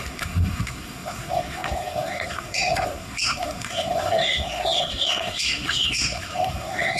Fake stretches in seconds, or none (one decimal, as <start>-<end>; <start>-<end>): 0.0-7.0